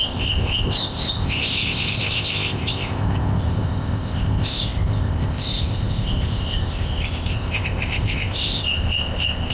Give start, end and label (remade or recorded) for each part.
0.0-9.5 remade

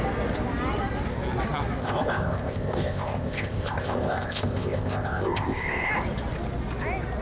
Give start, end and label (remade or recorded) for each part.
0.0-1.8 recorded; 1.8-5.9 remade; 5.9-7.2 recorded

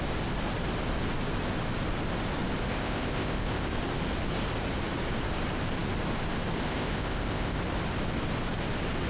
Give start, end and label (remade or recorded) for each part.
0.0-2.7 recorded; 2.7-3.7 remade; 3.7-6.7 recorded; 6.7-7.6 remade; 7.6-9.1 recorded

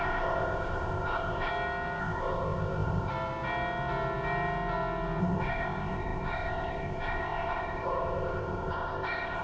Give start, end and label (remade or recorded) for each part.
0.0-1.5 remade; 1.5-2.0 recorded; 2.0-3.1 remade; 3.1-5.2 recorded; 5.2-9.4 remade

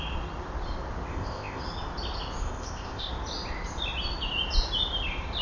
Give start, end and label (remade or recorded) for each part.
0.0-1.1 recorded; 1.1-1.6 remade; 1.6-2.4 recorded; 2.4-3.1 remade; 3.1-5.4 recorded